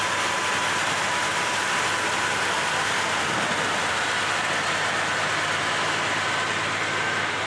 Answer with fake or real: real